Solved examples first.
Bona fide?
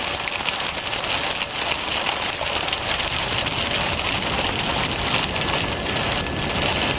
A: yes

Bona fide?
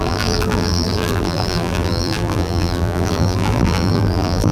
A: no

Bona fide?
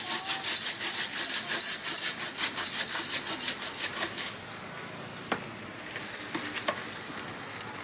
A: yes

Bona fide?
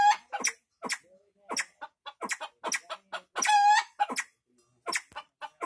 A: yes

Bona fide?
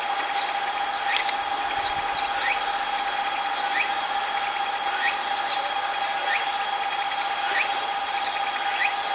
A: yes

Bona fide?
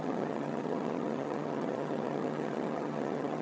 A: no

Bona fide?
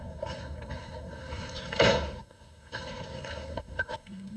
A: no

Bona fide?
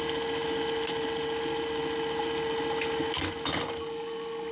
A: yes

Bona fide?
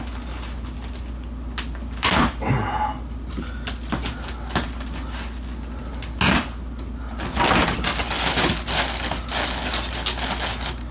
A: yes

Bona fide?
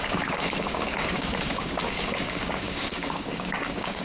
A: no